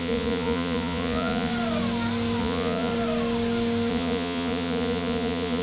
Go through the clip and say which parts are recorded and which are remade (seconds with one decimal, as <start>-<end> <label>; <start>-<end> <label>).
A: 0.0-1.5 remade; 1.5-2.4 recorded; 2.4-2.9 remade; 2.9-3.9 recorded; 3.9-5.6 remade